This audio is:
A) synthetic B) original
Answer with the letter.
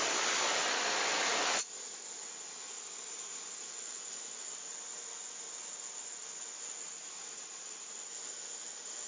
B